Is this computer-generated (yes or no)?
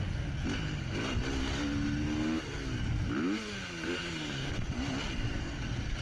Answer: no